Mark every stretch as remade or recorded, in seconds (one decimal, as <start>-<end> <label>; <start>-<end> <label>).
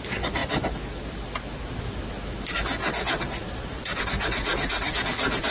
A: 0.0-2.8 recorded; 2.8-5.5 remade